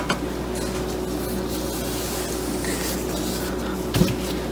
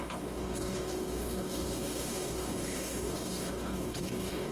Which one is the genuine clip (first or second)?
first